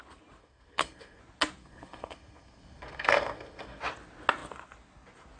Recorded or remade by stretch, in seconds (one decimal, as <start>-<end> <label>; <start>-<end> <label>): 0.0-0.4 recorded; 0.4-1.2 remade; 1.2-1.6 recorded; 1.6-3.8 remade; 3.8-5.4 recorded